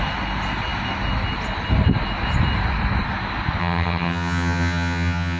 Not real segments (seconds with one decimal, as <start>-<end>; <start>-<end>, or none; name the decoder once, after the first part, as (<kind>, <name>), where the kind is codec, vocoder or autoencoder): 3.6-5.4 (vocoder, HiFi-GAN)